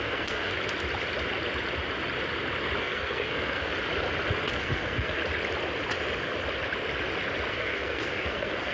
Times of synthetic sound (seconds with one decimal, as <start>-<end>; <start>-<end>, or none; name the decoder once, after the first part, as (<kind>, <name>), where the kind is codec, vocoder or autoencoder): 0.0-0.5 (codec, SNAC); 2.8-3.7; 4.5-5.2; 7.5-8.7